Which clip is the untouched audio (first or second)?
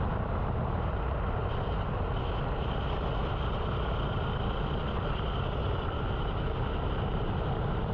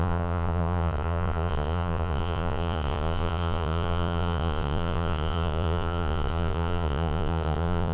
first